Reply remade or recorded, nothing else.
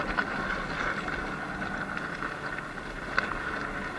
recorded